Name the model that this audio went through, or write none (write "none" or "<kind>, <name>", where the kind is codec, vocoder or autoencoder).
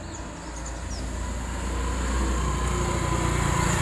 none